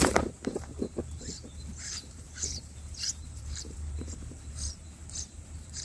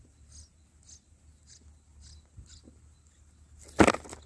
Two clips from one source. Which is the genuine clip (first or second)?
second